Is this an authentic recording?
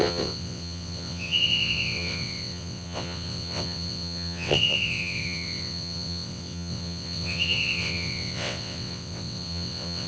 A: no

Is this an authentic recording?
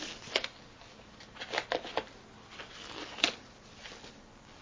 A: yes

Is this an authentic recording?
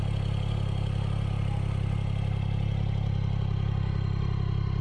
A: yes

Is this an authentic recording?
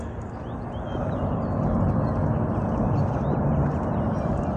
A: yes